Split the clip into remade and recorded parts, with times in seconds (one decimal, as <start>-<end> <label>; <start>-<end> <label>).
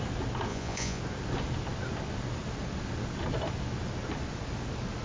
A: 0.0-0.5 recorded; 0.5-1.0 remade; 1.0-5.0 recorded